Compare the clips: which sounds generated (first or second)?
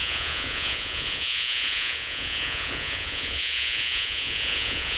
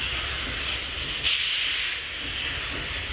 first